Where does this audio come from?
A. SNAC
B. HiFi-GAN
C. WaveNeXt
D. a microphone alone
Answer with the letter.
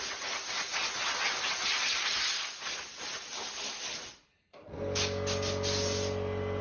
D